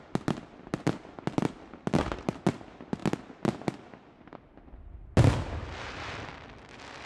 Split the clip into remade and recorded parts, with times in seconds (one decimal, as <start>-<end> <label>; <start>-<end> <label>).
0.0-7.1 recorded